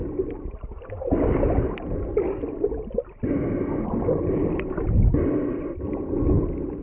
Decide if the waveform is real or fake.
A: real